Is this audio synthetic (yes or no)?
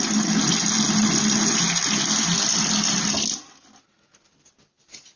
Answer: no